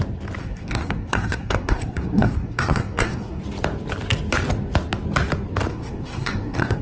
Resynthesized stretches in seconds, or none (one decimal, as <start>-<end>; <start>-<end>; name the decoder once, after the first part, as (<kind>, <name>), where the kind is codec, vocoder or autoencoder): 0.4-3.4 (codec, SNAC); 5.7-6.8